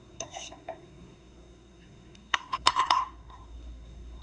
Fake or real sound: fake